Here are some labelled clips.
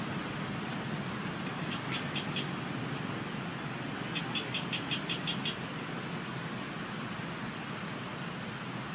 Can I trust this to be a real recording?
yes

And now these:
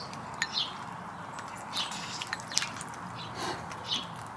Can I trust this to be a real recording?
yes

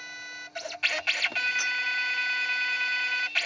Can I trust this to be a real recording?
yes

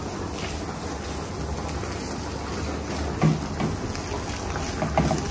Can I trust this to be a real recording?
yes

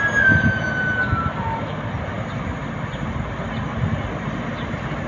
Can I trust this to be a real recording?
yes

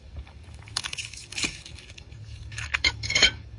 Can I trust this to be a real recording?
no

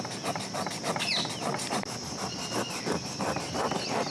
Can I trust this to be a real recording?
yes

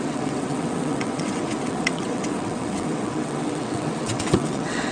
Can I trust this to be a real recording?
no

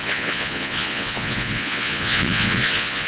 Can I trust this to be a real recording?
no